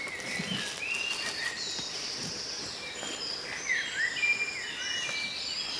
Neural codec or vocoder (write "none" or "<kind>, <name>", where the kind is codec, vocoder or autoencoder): none